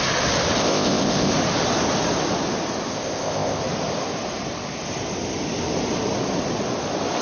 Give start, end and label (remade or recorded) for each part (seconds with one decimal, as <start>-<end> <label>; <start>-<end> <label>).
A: 0.0-0.6 recorded; 0.6-1.3 remade; 1.3-2.9 recorded; 2.9-3.6 remade; 3.6-7.2 recorded